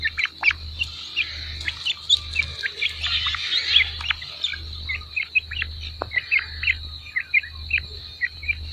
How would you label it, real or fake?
real